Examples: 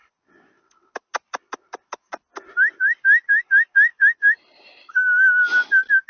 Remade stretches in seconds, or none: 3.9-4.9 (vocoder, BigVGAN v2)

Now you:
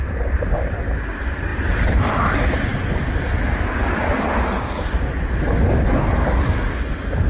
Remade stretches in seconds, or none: 1.5-2.1 (vocoder, BigVGAN v2)

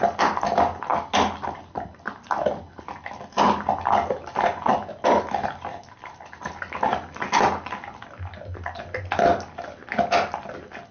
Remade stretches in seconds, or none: none

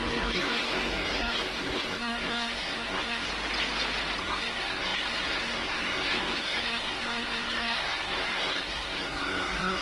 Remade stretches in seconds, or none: 0.0-3.3 (codec, SNAC); 4.2-9.8

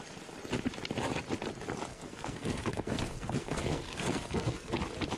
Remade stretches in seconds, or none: 1.9-4.7 (codec, SNAC)